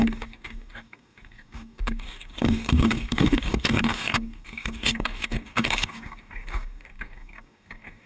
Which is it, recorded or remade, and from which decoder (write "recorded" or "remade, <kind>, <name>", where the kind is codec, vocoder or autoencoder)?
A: remade, codec, DAC